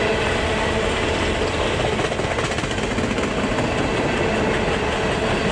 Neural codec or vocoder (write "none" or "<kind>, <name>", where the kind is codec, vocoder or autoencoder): none